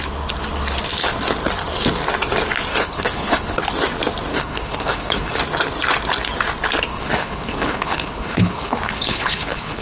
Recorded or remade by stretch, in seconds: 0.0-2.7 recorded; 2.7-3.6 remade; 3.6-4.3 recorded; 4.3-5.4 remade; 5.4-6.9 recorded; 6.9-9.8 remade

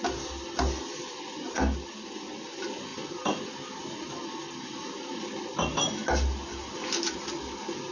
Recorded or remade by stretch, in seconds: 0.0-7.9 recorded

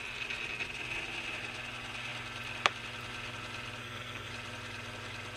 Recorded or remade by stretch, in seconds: 0.0-3.8 recorded; 3.8-4.3 remade; 4.3-5.4 recorded

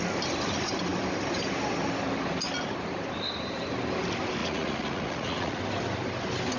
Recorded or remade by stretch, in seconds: 0.0-4.4 recorded; 4.4-5.6 remade; 5.6-6.6 recorded

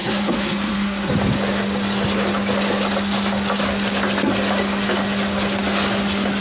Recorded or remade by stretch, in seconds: 0.0-1.1 remade; 1.1-6.4 recorded

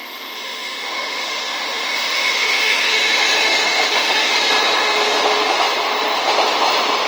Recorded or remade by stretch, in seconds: 0.0-4.3 remade; 4.3-7.1 recorded

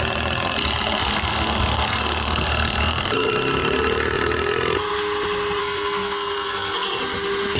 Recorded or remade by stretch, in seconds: 0.0-1.0 recorded; 1.0-3.1 remade; 3.1-5.6 recorded; 5.6-7.0 remade; 7.0-7.6 recorded

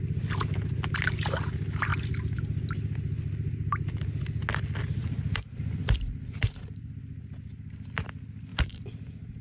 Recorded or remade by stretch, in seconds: 0.0-5.0 recorded; 5.0-6.9 remade; 6.9-8.5 recorded; 8.5-9.4 remade